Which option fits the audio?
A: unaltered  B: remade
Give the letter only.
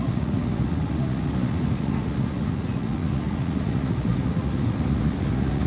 B